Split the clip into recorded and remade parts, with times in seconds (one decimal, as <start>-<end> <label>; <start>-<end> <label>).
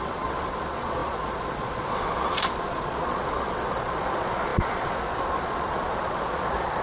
0.0-6.8 remade